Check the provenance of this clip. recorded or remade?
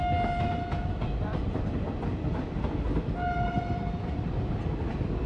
recorded